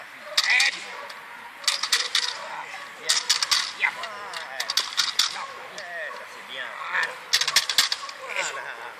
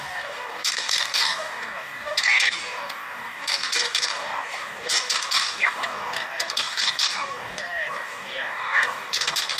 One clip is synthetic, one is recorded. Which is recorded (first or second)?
first